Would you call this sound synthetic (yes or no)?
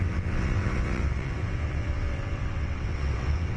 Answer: yes